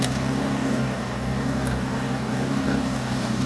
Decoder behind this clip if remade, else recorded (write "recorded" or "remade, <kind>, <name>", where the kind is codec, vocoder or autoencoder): remade, codec, DAC